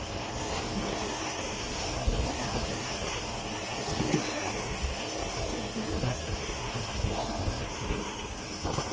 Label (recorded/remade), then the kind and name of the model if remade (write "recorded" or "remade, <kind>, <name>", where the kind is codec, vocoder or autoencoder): remade, codec, SNAC